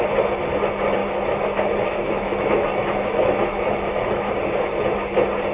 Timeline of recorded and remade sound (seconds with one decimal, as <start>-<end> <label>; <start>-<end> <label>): 0.0-1.0 recorded; 1.0-4.3 remade; 4.3-5.5 recorded